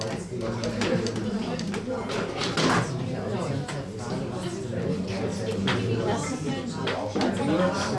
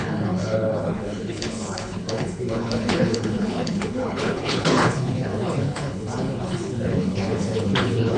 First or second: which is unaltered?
first